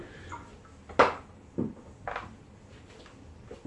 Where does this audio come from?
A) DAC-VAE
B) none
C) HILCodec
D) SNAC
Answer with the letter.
B